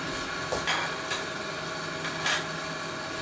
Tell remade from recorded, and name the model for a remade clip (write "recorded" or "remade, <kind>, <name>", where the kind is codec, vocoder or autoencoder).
recorded